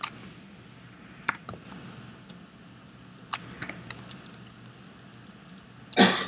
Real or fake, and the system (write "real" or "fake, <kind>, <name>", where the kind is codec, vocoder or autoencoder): real